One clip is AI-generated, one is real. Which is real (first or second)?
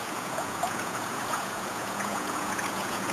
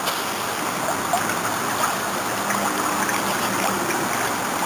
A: second